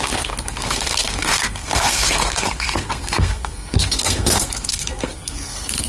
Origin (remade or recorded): remade